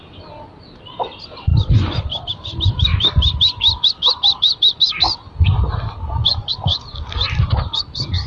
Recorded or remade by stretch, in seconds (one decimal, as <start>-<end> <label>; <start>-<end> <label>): 0.0-8.3 recorded